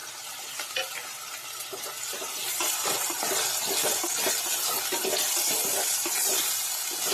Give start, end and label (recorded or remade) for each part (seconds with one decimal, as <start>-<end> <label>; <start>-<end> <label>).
0.0-7.1 recorded